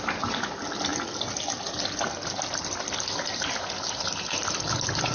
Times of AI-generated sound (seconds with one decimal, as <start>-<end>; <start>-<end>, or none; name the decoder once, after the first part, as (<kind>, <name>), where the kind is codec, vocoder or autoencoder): none